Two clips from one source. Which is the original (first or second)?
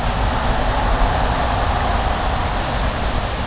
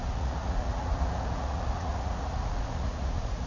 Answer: first